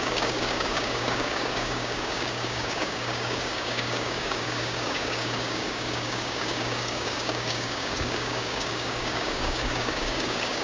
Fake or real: fake